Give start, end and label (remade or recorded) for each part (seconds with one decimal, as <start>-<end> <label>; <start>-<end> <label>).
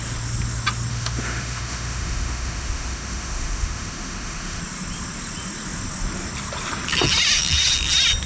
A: 0.0-0.9 recorded; 0.9-4.6 remade; 4.6-8.3 recorded